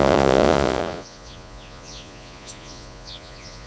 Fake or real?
fake